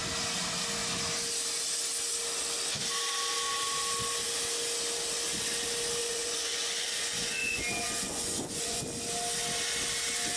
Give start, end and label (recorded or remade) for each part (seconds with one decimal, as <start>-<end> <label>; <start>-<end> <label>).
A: 0.0-6.0 recorded; 6.0-8.8 remade; 8.8-10.4 recorded